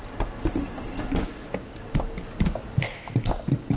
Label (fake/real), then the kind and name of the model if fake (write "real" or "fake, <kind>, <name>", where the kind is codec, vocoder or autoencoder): real